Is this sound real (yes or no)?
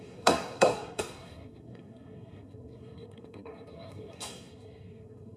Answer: no